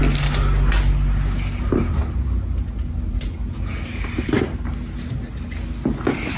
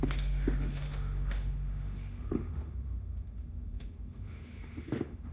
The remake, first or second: second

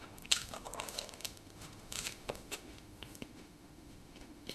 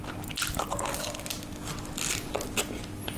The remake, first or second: first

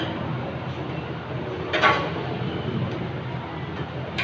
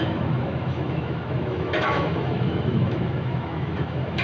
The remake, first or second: second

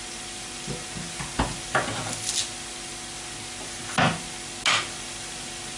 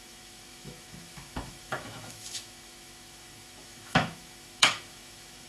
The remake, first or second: second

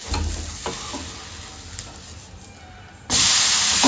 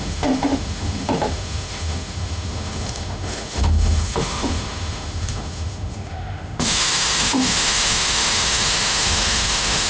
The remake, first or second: second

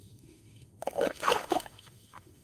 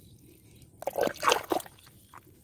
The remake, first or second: first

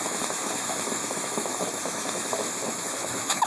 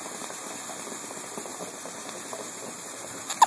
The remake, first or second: first